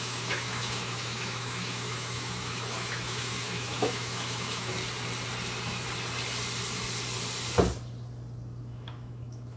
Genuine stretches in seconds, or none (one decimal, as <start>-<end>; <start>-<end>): 4.7-8.6